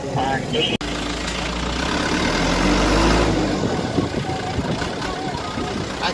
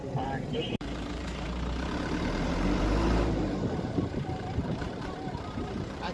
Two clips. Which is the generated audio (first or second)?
second